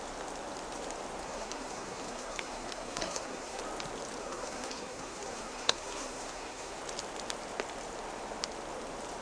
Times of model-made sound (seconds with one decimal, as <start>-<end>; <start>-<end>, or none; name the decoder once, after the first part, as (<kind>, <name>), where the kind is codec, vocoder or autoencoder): 1.2-3.6 (codec, SNAC); 4.2-6.8